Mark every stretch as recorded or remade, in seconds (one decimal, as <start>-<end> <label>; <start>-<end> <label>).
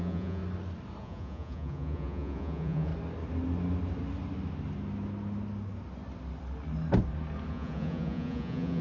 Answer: 0.0-0.4 remade; 0.4-1.0 recorded; 1.0-2.9 remade; 2.9-7.5 recorded; 7.5-8.8 remade